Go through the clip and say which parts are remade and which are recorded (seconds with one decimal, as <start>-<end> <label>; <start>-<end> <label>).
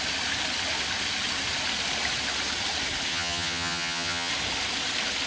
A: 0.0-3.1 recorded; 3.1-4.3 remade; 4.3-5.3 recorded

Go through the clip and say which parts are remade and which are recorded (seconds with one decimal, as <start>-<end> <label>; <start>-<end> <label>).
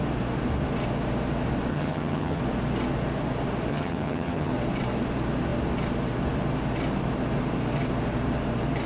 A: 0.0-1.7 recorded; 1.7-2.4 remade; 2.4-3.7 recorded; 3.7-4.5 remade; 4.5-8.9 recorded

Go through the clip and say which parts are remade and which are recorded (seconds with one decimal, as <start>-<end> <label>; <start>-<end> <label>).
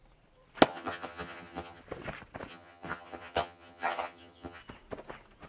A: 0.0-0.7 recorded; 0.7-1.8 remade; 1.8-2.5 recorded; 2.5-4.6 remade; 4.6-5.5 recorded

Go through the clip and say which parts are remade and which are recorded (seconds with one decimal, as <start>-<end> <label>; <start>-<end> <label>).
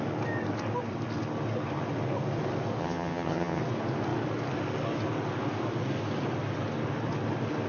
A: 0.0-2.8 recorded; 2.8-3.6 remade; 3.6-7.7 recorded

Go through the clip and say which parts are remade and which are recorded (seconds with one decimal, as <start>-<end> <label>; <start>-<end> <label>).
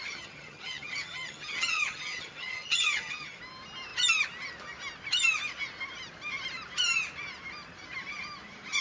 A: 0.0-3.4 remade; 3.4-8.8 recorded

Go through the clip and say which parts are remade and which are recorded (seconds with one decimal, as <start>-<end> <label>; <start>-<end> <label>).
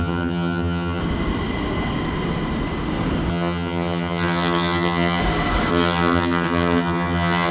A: 0.0-1.0 remade; 1.0-3.3 recorded; 3.3-5.2 remade; 5.2-5.7 recorded; 5.7-7.5 remade